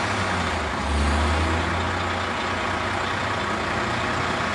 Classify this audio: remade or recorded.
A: recorded